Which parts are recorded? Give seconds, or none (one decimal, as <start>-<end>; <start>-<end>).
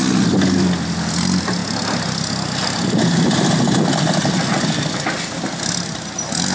0.0-6.5